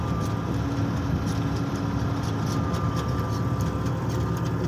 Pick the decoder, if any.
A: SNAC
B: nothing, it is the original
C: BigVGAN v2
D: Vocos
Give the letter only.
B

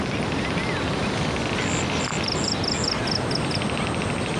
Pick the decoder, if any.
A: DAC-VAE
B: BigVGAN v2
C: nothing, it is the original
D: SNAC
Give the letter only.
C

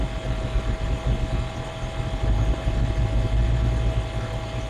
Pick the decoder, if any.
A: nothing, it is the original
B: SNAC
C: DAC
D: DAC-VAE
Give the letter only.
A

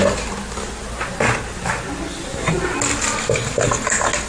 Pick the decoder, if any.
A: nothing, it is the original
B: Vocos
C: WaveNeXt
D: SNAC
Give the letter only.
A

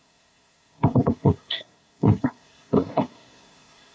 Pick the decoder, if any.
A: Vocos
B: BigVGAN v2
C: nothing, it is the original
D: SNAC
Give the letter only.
D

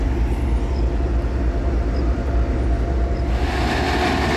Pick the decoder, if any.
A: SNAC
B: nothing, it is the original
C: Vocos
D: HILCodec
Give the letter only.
B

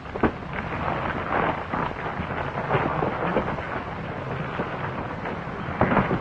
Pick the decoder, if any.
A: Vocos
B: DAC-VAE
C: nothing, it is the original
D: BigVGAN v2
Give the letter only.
C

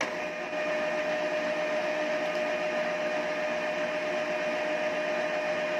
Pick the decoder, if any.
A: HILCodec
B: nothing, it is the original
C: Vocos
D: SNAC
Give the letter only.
B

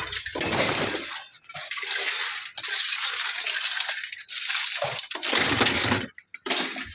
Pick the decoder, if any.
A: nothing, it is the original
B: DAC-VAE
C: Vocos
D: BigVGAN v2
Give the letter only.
A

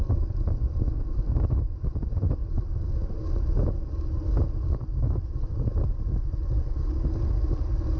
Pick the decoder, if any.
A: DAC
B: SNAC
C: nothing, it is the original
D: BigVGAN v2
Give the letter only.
C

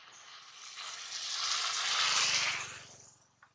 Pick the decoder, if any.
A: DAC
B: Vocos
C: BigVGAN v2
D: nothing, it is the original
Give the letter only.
D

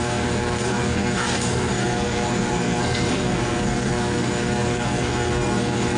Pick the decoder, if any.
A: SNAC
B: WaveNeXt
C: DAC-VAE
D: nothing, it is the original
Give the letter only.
A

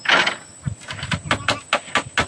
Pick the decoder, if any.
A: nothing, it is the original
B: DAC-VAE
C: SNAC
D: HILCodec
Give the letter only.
A